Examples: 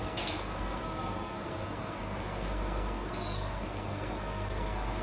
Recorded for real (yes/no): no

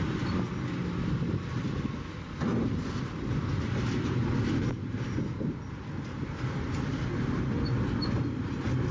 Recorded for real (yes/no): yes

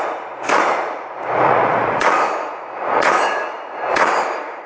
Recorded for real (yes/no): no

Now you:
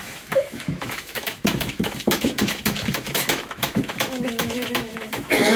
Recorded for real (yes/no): no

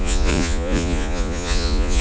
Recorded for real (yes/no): no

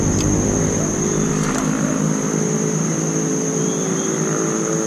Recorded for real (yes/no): yes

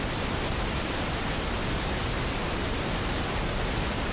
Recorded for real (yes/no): yes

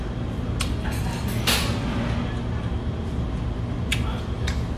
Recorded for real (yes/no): yes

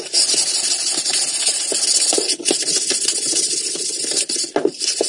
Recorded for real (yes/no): yes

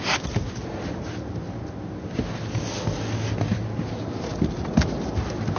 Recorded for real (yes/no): yes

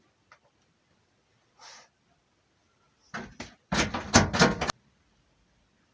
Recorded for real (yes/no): yes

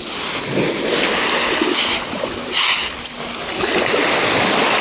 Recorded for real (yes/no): yes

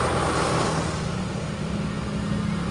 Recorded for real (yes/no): yes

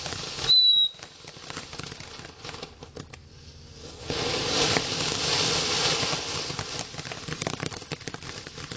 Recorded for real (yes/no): yes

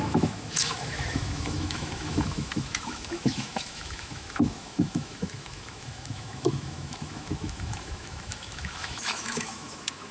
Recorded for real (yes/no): no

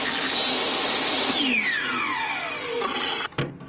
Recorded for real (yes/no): yes